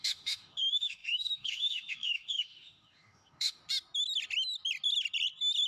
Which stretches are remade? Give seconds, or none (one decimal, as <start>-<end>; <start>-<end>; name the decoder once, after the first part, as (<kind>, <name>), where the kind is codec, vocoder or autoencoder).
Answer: 0.0-3.6 (autoencoder, DAC-VAE)